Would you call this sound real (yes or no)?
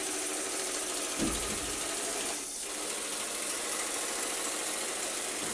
yes